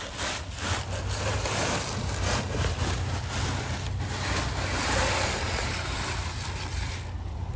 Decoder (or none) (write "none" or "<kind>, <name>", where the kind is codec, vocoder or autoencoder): none